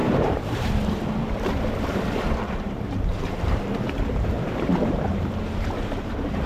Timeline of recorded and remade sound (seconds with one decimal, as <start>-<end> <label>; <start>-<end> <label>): 0.0-6.5 remade